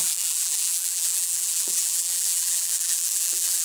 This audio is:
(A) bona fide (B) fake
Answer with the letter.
B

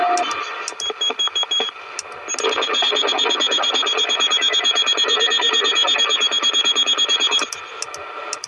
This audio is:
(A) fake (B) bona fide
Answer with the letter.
B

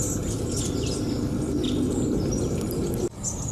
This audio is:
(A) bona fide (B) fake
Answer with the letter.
A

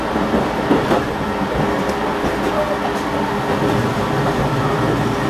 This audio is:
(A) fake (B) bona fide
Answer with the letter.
B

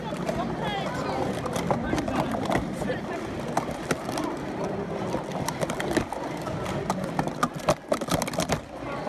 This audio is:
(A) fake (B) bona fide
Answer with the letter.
B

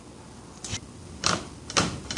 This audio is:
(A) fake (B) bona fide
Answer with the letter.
B